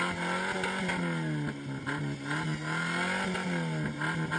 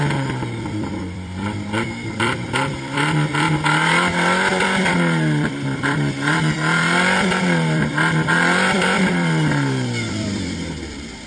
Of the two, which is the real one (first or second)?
first